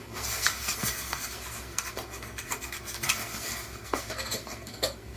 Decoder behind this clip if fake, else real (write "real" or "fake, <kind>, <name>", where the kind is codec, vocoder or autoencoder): fake, codec, SNAC